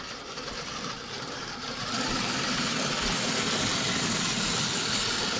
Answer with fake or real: fake